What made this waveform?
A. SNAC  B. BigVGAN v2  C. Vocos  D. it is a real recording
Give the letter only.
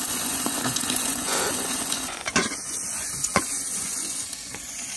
C